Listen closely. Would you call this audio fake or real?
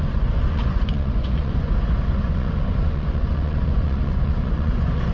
fake